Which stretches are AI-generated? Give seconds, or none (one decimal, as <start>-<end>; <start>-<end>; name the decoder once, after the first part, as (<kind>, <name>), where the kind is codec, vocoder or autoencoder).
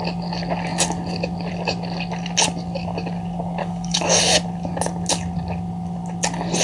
3.6-4.2 (codec, DAC)